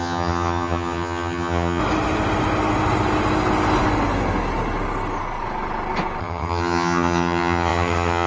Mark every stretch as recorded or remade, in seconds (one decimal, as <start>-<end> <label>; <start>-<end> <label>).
0.0-1.8 remade; 1.8-6.2 recorded; 6.2-8.3 remade